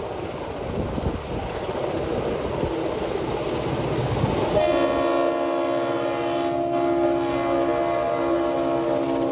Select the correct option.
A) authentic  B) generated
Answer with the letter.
A